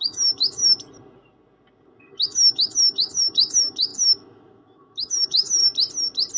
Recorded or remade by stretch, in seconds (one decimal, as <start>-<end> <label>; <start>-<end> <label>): 0.0-0.6 remade; 0.6-1.9 recorded; 1.9-5.6 remade; 5.6-6.4 recorded